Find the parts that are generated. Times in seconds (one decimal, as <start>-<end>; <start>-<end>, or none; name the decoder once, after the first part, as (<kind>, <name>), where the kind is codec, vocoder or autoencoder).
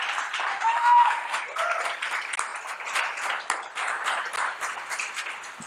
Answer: 0.5-1.4 (autoencoder, DAC-VAE)